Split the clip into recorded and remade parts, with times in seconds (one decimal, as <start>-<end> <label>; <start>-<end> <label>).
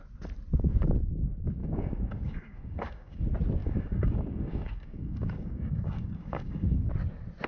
0.0-1.6 recorded; 1.6-3.2 remade; 3.2-3.6 recorded; 3.6-6.9 remade; 6.9-7.5 recorded